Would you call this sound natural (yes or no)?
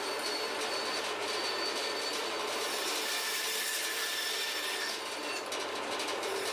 yes